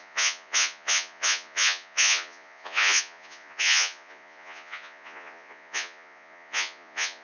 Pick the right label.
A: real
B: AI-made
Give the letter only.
B